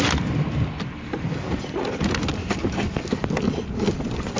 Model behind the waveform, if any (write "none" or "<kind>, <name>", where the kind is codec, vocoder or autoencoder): none